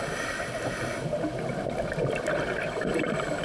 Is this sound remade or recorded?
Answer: recorded